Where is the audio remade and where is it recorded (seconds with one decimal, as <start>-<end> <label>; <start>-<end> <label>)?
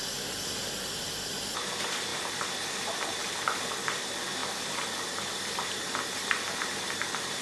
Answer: 0.0-7.4 remade